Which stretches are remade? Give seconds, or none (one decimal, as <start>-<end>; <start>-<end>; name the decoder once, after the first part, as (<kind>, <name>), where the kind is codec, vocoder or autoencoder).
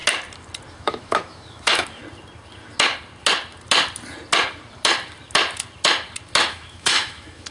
0.7-2.0 (autoencoder, DAC-VAE); 6.4-7.5